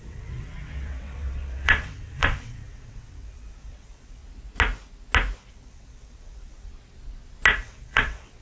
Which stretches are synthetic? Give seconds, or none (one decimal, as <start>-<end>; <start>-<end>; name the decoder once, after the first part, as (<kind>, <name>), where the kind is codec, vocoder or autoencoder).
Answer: 0.0-4.2 (vocoder, WaveNeXt); 5.5-6.7; 7.6-8.4